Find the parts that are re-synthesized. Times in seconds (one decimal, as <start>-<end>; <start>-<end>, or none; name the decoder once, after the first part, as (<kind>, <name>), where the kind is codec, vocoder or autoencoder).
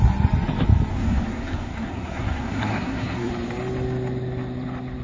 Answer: 0.9-3.3 (codec, SNAC)